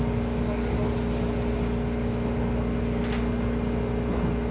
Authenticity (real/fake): real